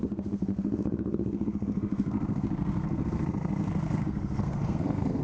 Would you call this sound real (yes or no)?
no